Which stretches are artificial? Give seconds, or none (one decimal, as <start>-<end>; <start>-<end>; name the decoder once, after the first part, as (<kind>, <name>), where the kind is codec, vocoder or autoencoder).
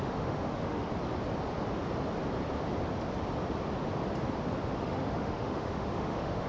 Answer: 0.0-0.9 (autoencoder, DAC-VAE); 4.8-6.5